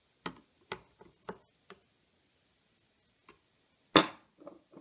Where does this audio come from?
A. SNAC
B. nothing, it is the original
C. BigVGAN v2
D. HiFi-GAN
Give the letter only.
B